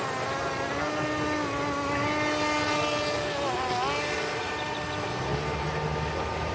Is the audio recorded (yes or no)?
yes